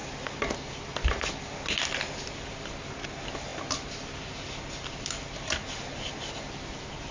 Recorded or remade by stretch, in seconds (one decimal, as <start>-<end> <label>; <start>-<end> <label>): 0.0-7.1 recorded

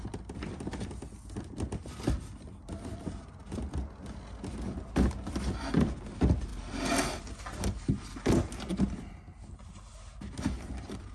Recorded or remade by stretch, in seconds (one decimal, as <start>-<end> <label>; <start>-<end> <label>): 0.0-11.1 recorded

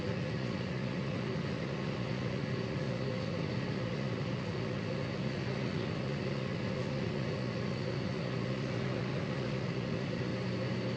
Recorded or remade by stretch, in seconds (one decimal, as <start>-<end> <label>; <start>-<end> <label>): 0.0-10.3 remade; 10.3-11.0 recorded

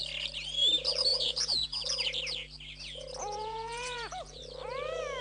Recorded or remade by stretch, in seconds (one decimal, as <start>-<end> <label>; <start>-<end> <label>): 0.0-1.1 recorded; 1.1-1.8 remade; 1.8-3.2 recorded; 3.2-4.4 remade; 4.4-5.2 recorded

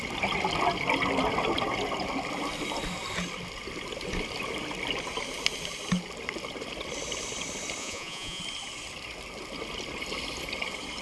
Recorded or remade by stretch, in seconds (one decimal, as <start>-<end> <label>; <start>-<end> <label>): 0.0-7.8 recorded; 7.8-8.4 remade; 8.4-11.0 recorded

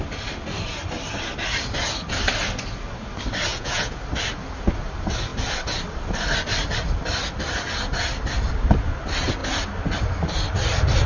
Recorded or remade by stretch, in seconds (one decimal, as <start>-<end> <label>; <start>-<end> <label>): 0.0-3.5 recorded; 3.5-4.0 remade; 4.0-11.1 recorded

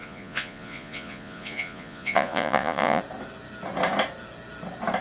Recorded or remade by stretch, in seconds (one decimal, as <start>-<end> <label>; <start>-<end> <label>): 0.0-3.0 remade; 3.0-5.0 recorded